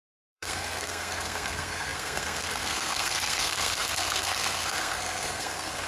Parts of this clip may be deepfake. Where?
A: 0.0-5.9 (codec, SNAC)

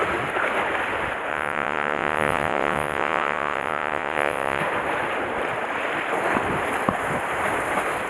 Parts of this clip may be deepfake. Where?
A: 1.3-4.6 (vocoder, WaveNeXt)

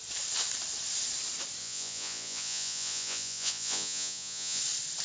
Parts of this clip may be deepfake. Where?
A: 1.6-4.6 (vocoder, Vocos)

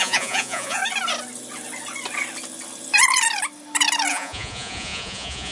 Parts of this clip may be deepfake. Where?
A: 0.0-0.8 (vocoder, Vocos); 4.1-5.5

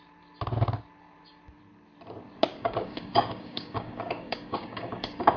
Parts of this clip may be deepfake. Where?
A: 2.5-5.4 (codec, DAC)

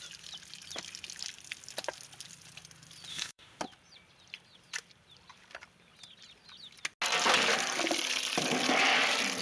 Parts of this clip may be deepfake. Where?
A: 3.1-3.6 (autoencoder, DAC-VAE)

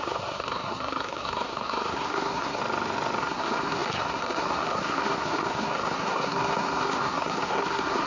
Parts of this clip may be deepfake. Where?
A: 0.0-2.6 (codec, SNAC); 3.2-8.1